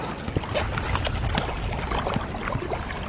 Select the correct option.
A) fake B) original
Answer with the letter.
B